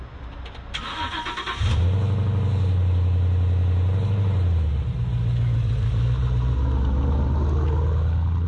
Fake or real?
real